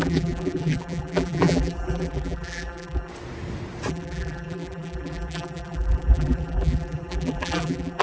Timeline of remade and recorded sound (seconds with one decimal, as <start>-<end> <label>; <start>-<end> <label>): 0.0-3.1 remade; 3.1-3.9 recorded; 3.9-8.0 remade